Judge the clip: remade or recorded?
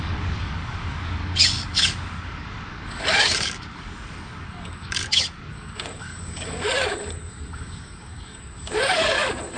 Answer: remade